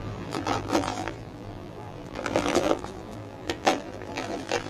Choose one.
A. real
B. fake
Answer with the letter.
B